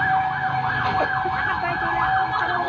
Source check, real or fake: real